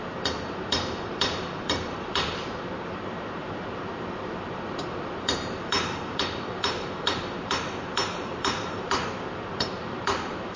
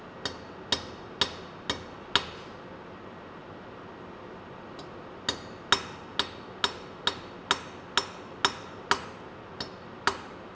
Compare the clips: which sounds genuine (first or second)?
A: second